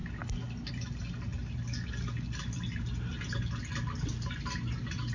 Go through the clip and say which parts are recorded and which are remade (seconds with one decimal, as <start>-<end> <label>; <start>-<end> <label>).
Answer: 0.0-5.1 recorded